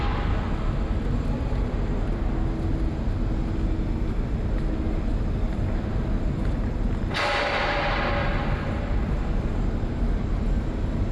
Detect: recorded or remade recorded